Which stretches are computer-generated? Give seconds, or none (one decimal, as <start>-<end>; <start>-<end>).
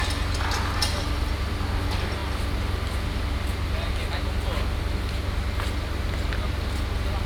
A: none